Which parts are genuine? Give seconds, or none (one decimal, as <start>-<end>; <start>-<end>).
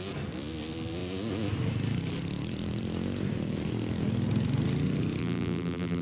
0.0-5.2